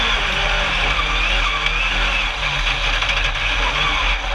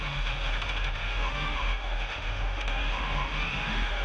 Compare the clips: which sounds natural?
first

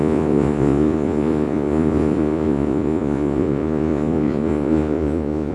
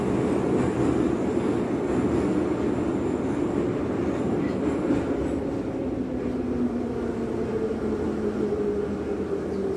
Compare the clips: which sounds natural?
second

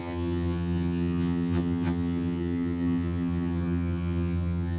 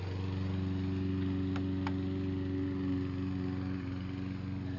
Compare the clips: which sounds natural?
second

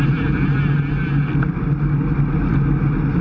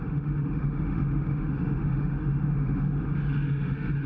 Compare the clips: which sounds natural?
first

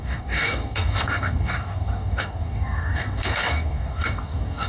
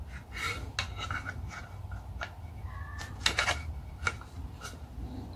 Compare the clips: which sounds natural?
second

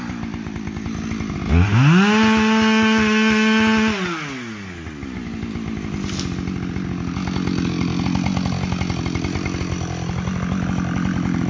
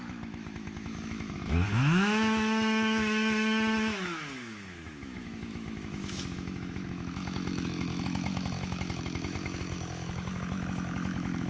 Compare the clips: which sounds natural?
first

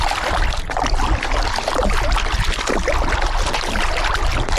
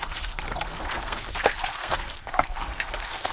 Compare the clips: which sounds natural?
first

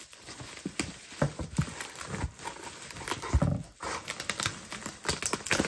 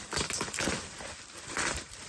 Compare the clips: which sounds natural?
first